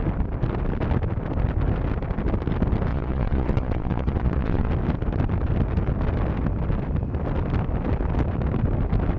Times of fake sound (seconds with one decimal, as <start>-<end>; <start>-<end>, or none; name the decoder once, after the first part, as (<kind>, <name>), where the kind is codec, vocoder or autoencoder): 2.9-4.7 (vocoder, Vocos)